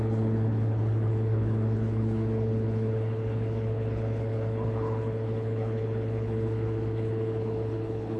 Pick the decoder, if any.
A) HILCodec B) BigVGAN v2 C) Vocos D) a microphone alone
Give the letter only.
A